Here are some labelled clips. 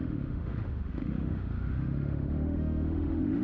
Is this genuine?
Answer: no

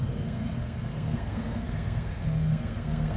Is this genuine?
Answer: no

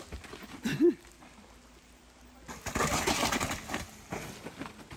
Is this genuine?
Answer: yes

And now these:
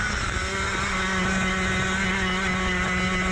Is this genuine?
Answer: yes